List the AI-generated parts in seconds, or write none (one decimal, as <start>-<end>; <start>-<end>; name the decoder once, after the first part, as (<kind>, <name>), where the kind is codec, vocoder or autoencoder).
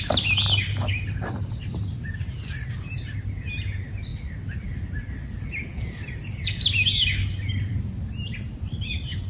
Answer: none